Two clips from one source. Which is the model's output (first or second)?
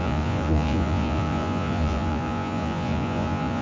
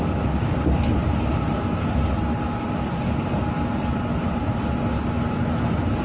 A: first